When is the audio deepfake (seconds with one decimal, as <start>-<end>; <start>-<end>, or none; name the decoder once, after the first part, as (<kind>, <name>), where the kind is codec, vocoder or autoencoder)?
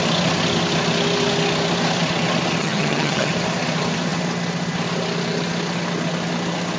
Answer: 2.6-3.3 (vocoder, HiFi-GAN)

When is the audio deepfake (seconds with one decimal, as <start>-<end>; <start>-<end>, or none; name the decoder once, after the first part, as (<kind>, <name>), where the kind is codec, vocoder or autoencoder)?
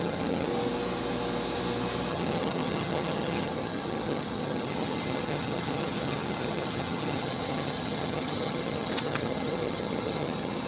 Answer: 0.0-0.5 (vocoder, HiFi-GAN); 2.1-10.7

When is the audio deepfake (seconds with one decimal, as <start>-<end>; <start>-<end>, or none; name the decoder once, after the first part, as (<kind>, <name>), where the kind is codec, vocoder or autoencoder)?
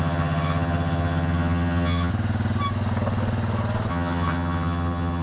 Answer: 0.0-2.1 (vocoder, HiFi-GAN); 3.9-5.2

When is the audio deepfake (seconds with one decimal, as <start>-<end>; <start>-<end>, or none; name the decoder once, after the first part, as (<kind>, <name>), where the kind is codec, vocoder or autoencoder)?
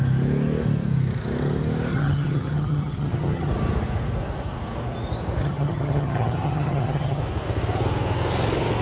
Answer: 1.9-3.5 (vocoder, HiFi-GAN); 5.4-7.2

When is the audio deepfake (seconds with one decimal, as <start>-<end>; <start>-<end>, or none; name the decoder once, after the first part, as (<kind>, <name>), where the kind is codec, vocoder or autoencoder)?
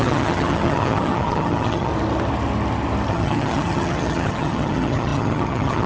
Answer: 0.0-1.9 (vocoder, HiFi-GAN); 3.1-5.9